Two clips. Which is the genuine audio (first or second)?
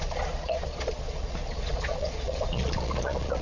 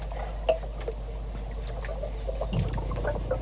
second